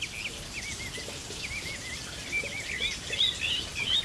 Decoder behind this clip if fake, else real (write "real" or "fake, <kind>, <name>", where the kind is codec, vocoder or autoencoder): real